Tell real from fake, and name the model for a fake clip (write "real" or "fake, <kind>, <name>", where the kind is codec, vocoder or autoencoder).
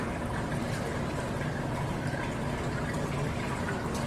fake, vocoder, BigVGAN v2